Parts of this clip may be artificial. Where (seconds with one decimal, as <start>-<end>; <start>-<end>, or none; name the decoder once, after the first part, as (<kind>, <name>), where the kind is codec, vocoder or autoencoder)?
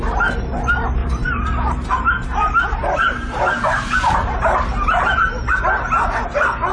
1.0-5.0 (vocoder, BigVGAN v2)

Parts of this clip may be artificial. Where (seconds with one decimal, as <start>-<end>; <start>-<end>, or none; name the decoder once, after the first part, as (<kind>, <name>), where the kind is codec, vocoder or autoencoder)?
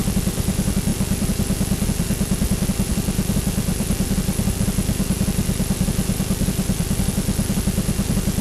0.0-8.4 (vocoder, BigVGAN v2)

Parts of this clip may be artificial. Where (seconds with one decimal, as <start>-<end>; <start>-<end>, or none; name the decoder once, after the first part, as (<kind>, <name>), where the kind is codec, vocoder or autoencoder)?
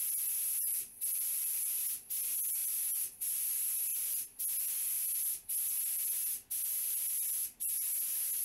0.7-1.7 (vocoder, BigVGAN v2)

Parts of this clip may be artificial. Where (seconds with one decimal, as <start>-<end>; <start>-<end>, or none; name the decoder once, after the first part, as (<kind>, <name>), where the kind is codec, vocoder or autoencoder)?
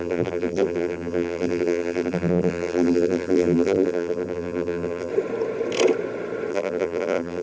0.0-5.1 (vocoder, BigVGAN v2); 6.5-7.4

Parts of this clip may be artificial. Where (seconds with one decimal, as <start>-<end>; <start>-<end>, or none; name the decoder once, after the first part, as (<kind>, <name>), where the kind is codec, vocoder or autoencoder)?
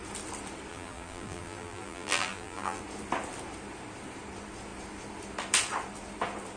0.7-2.8 (vocoder, BigVGAN v2)